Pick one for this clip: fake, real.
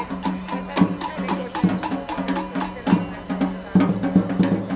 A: real